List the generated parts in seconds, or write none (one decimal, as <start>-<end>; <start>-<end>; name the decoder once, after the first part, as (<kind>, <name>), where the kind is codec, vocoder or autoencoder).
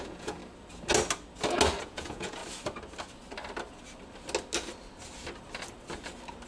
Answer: 0.0-0.4 (vocoder, Vocos); 1.8-2.4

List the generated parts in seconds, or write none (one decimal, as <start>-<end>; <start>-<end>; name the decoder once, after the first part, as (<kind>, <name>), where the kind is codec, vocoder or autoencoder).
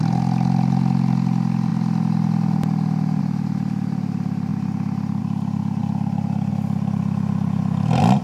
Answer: none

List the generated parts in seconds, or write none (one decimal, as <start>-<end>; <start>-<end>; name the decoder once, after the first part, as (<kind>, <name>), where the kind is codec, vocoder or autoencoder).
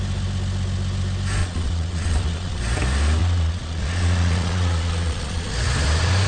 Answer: 1.4-2.6 (vocoder, Vocos); 3.2-5.5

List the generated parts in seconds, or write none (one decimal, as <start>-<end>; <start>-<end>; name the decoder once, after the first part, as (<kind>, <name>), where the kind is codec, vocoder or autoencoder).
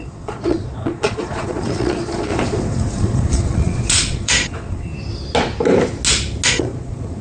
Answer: 0.0-4.9 (vocoder, Vocos); 6.5-7.2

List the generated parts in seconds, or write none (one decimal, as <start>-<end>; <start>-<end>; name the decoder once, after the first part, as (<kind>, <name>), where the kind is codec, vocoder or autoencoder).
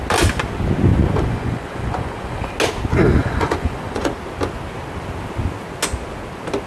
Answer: 0.9-2.5 (vocoder, Vocos); 3.2-4.1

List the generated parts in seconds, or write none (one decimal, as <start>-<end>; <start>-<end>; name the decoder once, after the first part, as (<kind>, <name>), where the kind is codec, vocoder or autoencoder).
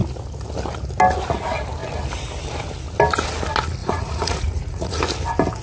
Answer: 3.8-5.0 (vocoder, Vocos)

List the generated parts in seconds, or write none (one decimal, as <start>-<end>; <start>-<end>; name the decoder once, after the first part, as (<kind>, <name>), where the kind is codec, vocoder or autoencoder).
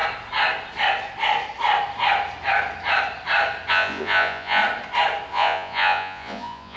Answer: 3.7-4.6 (vocoder, Vocos); 5.3-6.8